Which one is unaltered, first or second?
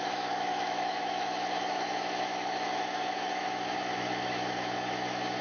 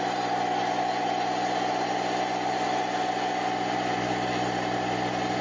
second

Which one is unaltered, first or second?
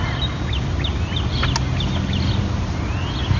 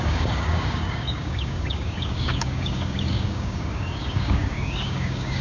first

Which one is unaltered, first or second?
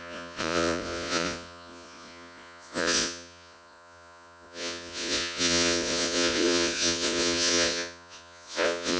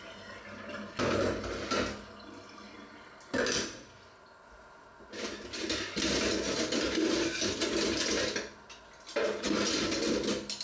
second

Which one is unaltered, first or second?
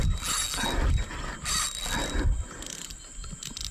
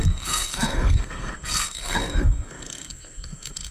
first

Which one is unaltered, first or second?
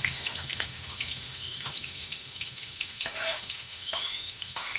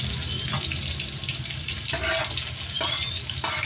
second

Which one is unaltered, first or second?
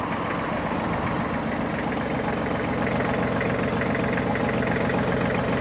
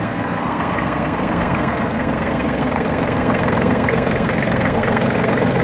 first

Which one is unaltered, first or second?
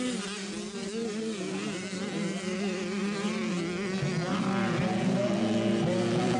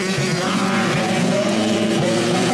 first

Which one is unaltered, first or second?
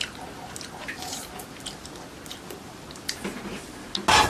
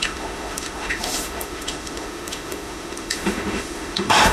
first